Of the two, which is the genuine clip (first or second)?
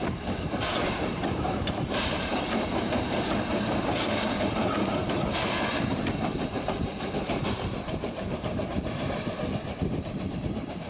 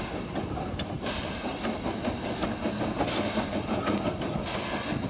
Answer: second